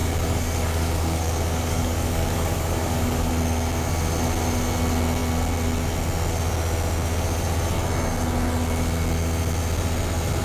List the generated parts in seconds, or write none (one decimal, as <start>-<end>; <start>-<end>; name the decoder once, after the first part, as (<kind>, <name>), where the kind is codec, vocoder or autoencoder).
0.0-3.3 (codec, DAC)